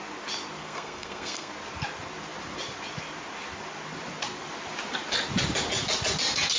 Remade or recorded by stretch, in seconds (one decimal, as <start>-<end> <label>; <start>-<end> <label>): 0.0-0.6 recorded; 0.6-1.5 remade; 1.5-6.6 recorded